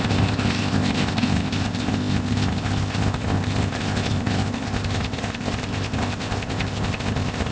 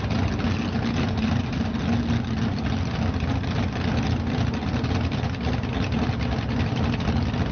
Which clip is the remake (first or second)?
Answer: first